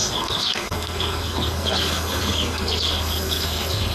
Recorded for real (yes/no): no